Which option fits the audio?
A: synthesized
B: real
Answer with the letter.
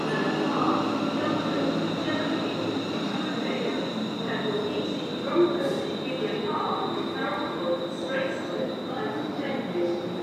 B